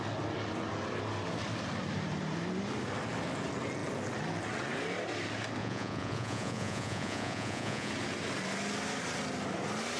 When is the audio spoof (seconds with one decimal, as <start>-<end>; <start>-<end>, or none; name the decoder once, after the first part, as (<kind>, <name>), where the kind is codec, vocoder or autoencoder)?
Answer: 5.6-7.9 (vocoder, Vocos)